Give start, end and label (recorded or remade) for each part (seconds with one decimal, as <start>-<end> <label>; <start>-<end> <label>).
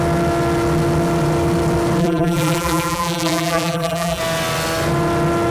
0.0-2.0 recorded; 2.0-4.2 remade; 4.2-5.5 recorded